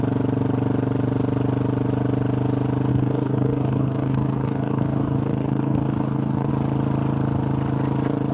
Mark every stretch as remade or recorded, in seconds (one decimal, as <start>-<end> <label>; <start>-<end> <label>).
0.0-2.9 recorded; 2.9-6.5 remade; 6.5-8.3 recorded